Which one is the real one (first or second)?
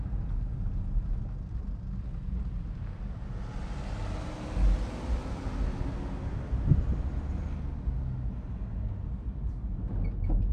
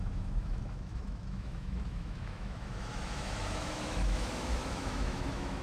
first